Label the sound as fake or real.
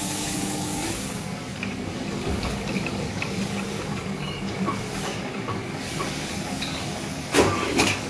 fake